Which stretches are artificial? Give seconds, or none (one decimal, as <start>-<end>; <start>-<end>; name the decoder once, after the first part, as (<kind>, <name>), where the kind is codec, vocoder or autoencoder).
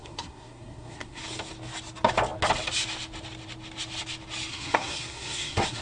0.0-1.2 (codec, SNAC); 4.5-5.8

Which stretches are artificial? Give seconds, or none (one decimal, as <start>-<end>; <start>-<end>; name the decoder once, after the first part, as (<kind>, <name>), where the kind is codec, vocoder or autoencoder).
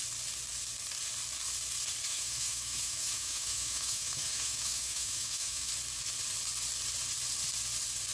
2.1-5.7 (autoencoder, DAC-VAE)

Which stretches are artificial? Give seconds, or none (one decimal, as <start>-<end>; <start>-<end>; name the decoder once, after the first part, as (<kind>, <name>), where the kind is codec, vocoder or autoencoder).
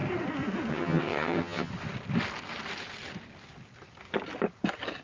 0.7-1.7 (vocoder, HiFi-GAN)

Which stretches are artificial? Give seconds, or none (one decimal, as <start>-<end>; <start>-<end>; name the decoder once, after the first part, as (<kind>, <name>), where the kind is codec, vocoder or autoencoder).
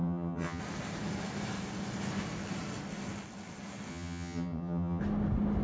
0.0-0.6 (vocoder, HiFi-GAN); 3.9-5.0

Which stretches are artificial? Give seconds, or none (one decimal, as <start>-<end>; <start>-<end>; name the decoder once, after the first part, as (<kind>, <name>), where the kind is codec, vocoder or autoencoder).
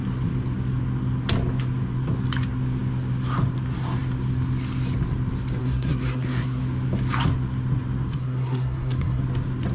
5.6-6.6 (codec, SNAC); 8.1-9.2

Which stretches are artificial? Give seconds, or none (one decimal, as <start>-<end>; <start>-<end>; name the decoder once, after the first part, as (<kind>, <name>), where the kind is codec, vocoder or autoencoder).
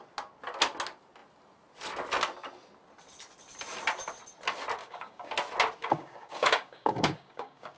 4.8-5.3 (codec, DAC); 5.8-7.8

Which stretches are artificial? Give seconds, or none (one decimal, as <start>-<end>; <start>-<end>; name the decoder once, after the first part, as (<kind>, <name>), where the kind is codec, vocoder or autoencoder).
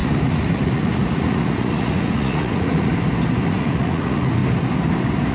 0.0-2.9 (vocoder, Vocos); 3.6-4.4